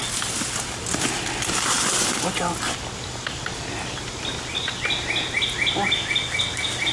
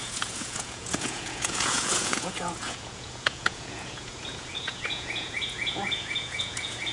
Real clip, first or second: first